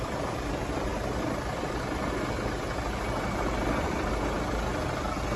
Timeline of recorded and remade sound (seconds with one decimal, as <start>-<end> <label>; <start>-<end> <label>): 0.0-5.4 recorded